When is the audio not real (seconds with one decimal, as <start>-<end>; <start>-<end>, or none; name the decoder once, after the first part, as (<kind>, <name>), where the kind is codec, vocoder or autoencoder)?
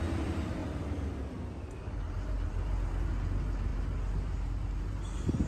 none